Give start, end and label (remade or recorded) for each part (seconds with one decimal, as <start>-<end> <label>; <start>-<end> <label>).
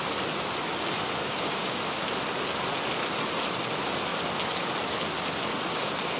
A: 0.0-1.2 recorded; 1.2-1.8 remade; 1.8-6.2 recorded